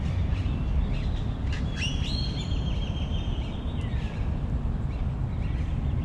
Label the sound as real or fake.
real